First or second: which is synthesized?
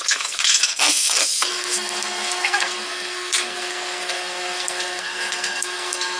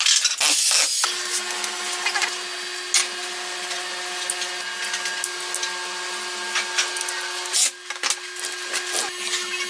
first